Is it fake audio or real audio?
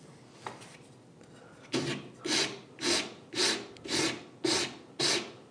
real